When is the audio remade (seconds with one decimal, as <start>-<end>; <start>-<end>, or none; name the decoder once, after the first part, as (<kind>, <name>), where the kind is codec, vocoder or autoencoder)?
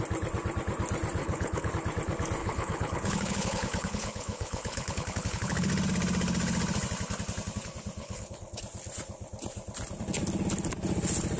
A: 1.2-1.7 (codec, HILCodec); 2.4-5.7; 8.0-8.6